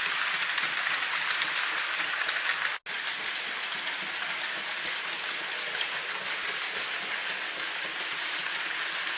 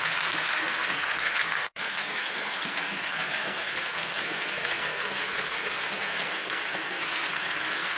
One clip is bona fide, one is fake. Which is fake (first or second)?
second